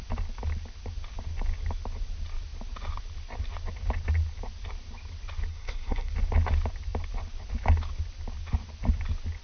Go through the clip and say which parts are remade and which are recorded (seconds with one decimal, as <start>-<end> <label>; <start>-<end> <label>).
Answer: 0.0-5.5 recorded; 5.5-6.1 remade; 6.1-9.4 recorded